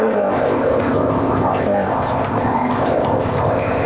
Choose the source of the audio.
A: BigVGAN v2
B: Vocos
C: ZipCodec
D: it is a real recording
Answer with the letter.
C